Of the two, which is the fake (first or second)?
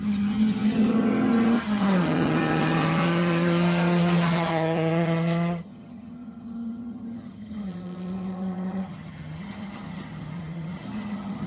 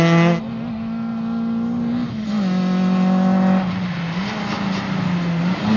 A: first